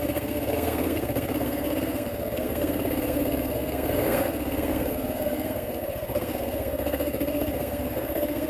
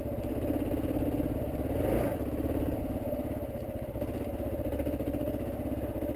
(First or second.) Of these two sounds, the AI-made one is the first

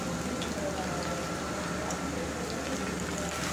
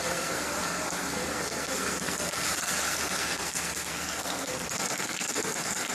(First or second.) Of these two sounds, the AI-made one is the second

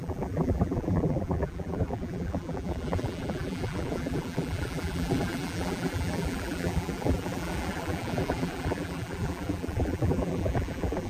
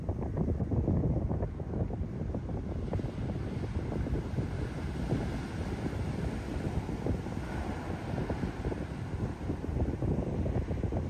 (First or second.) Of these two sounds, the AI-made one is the first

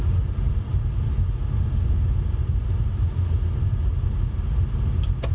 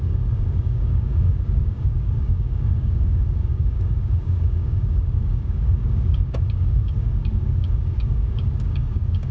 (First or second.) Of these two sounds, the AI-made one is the second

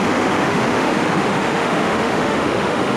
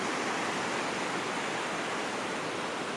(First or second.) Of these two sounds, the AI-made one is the first